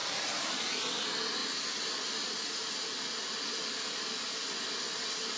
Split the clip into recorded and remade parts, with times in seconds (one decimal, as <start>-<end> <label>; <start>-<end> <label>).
0.0-0.7 remade; 0.7-5.4 recorded